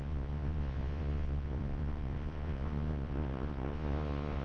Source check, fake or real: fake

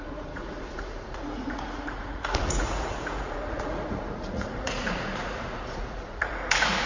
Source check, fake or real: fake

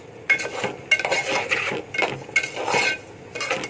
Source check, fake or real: real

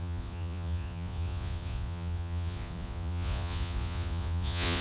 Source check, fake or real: fake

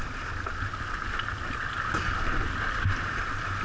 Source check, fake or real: real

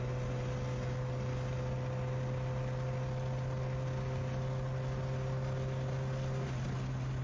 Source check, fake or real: real